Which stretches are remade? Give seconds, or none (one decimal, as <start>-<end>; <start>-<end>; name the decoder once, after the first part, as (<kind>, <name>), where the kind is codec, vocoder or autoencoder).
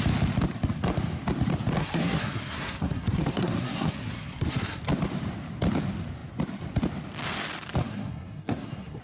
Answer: 1.8-4.8 (codec, SNAC); 7.8-9.0